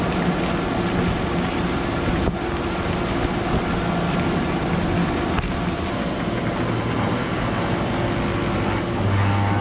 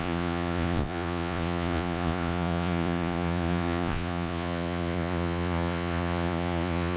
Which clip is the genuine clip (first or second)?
first